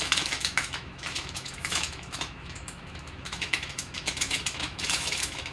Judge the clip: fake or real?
fake